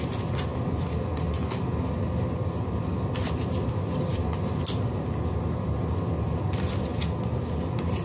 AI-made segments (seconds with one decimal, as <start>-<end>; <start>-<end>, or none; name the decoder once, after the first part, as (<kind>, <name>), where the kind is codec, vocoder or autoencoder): none